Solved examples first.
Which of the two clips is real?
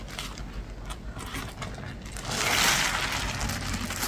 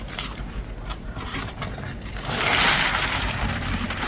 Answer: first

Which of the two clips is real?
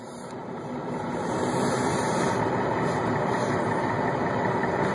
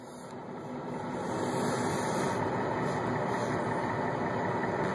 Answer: second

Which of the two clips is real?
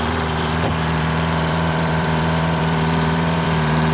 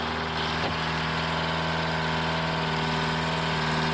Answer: second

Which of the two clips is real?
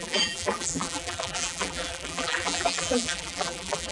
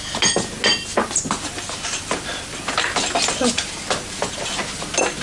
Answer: second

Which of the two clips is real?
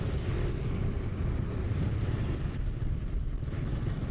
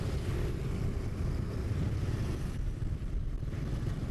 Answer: first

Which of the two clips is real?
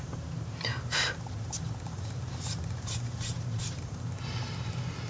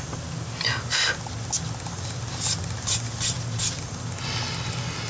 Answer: second